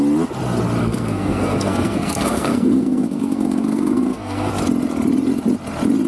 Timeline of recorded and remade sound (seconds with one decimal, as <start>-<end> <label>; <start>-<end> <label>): 0.0-0.8 recorded; 0.8-4.5 remade; 4.5-6.1 recorded